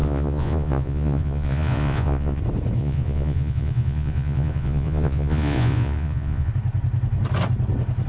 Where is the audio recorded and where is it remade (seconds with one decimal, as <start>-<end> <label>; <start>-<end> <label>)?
0.0-2.4 remade; 2.4-2.8 recorded; 2.8-6.5 remade; 6.5-8.1 recorded